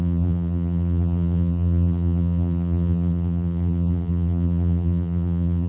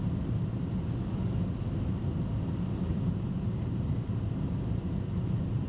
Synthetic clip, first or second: first